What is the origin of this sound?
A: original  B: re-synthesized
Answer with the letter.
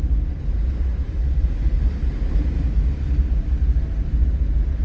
A